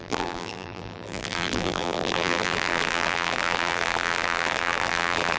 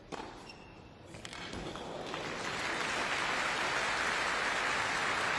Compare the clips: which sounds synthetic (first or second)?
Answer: first